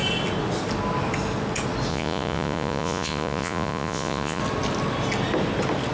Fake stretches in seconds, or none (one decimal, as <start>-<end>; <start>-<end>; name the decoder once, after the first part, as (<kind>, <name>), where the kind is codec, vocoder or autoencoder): 1.9-4.4 (vocoder, Vocos)